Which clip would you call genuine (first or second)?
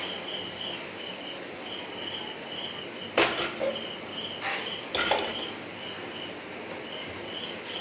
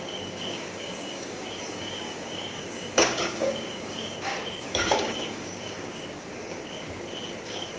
first